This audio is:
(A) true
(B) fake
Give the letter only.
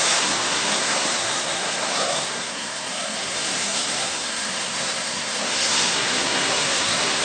B